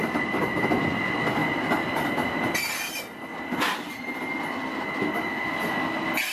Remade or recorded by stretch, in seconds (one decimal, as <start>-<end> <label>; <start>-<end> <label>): 0.0-6.3 recorded